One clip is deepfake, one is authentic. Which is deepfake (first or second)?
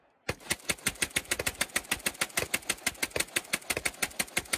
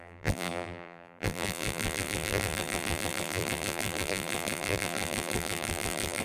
second